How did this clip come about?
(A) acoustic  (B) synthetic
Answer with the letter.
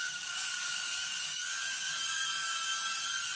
B